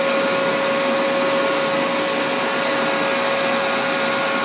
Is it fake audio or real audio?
real